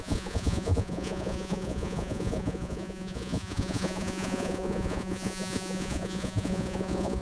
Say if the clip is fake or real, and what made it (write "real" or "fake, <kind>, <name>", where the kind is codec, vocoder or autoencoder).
fake, vocoder, Vocos